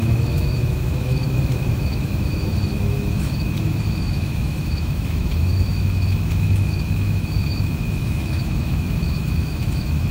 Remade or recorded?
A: remade